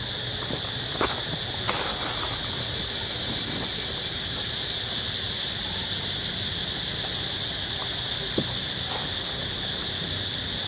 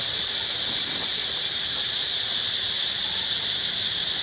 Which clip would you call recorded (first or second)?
first